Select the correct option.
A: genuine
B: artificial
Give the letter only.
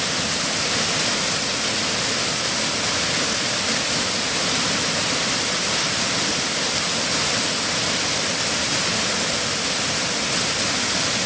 A